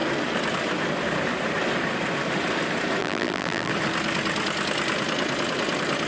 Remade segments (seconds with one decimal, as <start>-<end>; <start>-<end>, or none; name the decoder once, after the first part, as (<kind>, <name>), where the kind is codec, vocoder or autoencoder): 3.0-3.7 (vocoder, BigVGAN v2)